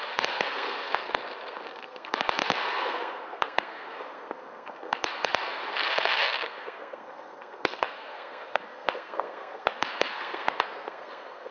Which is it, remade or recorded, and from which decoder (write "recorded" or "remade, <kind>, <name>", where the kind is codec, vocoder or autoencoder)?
remade, codec, SNAC